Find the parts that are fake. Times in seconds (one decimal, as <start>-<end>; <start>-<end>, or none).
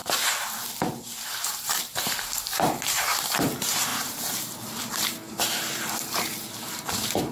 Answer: 0.8-7.3